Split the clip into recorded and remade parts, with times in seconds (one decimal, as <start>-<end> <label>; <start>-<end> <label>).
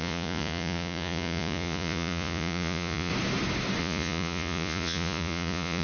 0.0-3.1 remade; 3.1-3.8 recorded; 3.8-5.8 remade